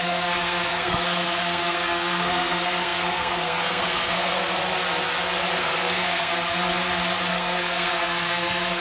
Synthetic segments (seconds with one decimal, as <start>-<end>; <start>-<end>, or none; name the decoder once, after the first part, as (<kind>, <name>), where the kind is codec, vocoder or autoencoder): 0.0-4.4 (codec, SNAC); 5.6-6.3; 7.3-8.8